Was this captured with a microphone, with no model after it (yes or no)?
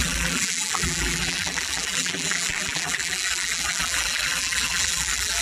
no